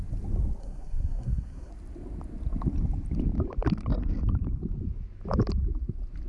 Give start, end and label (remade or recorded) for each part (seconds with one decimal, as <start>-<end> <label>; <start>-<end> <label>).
0.0-0.6 recorded; 0.6-1.7 remade; 1.7-6.3 recorded